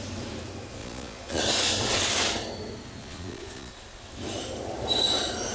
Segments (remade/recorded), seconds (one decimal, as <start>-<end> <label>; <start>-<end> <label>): 0.0-0.8 recorded; 0.8-1.4 remade; 1.4-3.0 recorded; 3.0-3.7 remade; 3.7-5.5 recorded